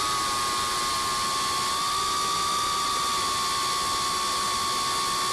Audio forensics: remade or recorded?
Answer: recorded